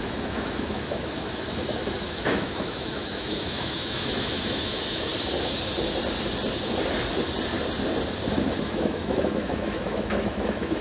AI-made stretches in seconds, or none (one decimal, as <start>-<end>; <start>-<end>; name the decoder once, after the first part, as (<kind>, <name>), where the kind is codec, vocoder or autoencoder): 0.0-5.1 (autoencoder, DAC-VAE); 8.6-10.8